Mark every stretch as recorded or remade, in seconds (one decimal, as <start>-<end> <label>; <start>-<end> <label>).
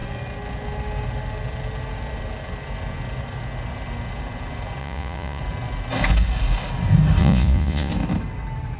0.0-4.8 recorded; 4.8-5.4 remade; 5.4-7.2 recorded; 7.2-7.9 remade; 7.9-8.8 recorded